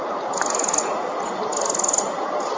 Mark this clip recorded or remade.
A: recorded